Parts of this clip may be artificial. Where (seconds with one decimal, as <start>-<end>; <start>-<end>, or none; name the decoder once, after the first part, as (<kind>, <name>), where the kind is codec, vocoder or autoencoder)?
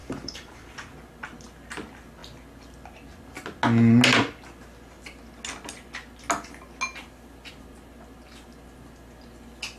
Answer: 0.0-0.7 (vocoder, BigVGAN v2)